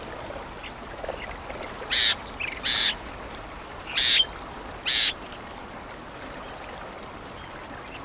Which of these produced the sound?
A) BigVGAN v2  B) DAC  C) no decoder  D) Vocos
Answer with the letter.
C